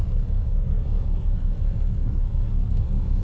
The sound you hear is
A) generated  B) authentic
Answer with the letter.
A